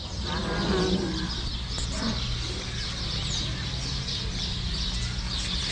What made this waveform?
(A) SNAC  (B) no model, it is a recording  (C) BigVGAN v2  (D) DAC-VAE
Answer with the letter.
B